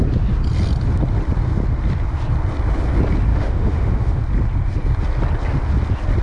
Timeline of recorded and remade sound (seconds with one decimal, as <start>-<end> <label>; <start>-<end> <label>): 0.0-3.3 recorded; 3.3-4.2 remade; 4.2-6.2 recorded